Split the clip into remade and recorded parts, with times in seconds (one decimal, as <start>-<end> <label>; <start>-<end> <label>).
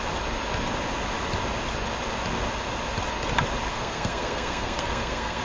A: 0.0-3.7 recorded; 3.7-5.4 remade